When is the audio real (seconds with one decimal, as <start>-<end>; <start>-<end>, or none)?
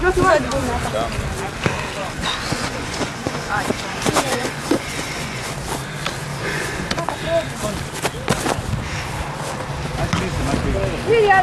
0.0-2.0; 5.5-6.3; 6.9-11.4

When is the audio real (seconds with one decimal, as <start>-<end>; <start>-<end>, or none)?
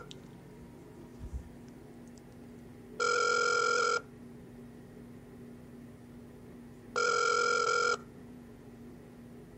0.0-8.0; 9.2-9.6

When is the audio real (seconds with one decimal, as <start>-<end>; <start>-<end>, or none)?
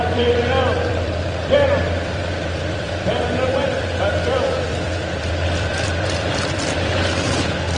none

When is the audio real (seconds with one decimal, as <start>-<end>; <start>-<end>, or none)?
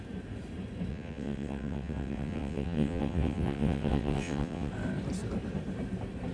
0.0-0.9; 4.7-6.3